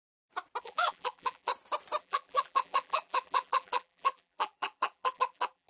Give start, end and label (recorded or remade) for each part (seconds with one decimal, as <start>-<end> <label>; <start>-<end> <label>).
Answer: 0.0-0.6 recorded; 0.6-1.5 remade; 1.5-2.0 recorded; 2.0-5.7 remade